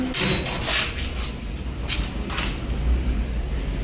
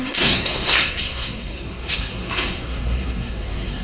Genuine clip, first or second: first